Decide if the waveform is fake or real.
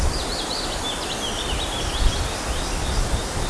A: real